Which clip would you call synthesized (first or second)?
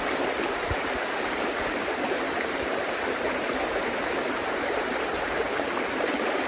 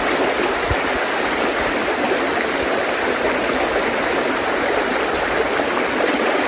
first